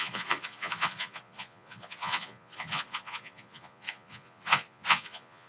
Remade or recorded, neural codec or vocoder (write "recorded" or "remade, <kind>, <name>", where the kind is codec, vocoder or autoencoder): remade, vocoder, Vocos